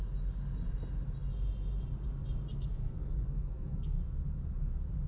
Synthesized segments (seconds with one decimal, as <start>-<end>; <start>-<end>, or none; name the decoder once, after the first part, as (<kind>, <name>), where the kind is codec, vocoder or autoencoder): 2.5-4.0 (codec, SNAC)

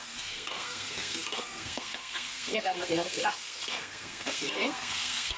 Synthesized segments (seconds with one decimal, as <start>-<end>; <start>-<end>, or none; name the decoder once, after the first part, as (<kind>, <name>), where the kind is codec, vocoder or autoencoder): 0.0-5.4 (codec, SNAC)

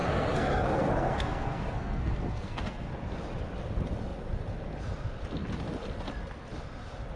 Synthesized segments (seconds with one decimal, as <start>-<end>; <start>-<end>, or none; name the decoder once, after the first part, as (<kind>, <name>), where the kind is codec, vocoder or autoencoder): 0.0-2.9 (codec, SNAC)

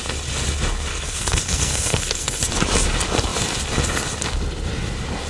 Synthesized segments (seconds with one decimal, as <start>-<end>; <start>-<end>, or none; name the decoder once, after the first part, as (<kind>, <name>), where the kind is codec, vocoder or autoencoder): 0.9-2.4 (codec, SNAC)

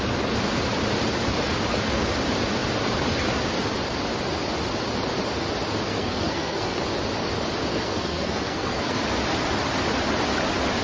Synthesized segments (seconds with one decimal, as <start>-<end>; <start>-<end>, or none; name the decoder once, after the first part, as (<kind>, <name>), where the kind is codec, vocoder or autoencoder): 5.9-6.8 (codec, SNAC); 7.7-9.0

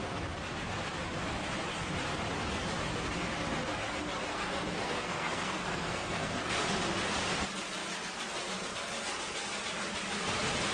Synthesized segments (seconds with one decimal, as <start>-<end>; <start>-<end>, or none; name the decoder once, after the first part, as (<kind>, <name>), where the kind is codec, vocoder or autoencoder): 4.3-6.6 (codec, SNAC)

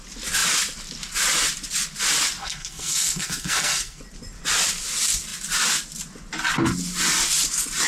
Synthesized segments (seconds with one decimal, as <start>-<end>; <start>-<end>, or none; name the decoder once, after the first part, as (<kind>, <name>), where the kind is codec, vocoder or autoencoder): 2.4-4.0 (codec, SNAC)

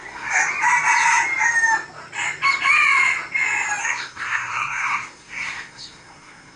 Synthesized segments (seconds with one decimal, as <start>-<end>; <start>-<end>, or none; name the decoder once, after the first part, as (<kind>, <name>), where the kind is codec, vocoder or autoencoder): 0.0-0.4 (codec, SNAC); 3.8-6.6